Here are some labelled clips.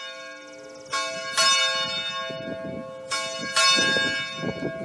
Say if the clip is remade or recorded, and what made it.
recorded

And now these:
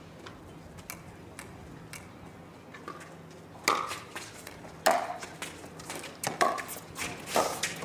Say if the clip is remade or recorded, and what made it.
recorded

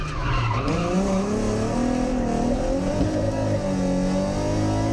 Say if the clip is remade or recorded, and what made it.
recorded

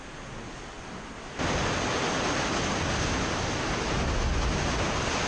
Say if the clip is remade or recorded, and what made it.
recorded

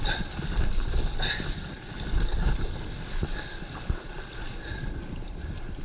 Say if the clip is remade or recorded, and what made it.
recorded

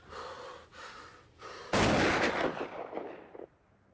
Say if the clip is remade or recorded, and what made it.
recorded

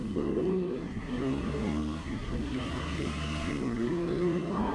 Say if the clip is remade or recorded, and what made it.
remade, codec, SNAC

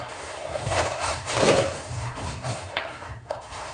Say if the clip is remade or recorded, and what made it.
remade, codec, SNAC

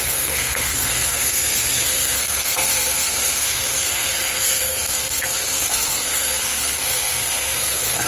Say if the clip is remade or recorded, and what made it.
remade, codec, SNAC